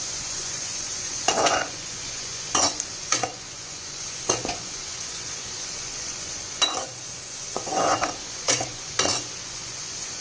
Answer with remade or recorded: remade